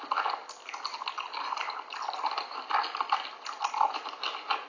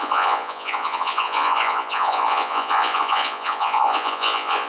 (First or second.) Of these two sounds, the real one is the first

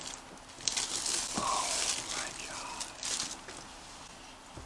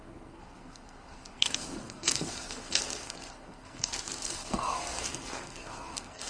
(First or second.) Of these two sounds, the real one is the first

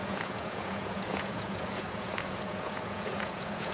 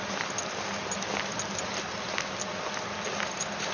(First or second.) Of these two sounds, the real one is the second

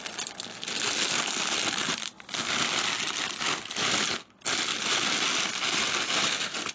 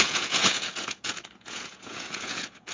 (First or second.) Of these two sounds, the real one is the first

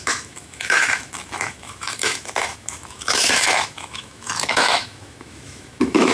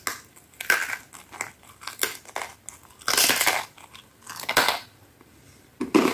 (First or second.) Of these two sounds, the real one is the second